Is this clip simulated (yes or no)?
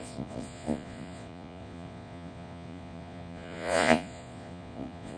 yes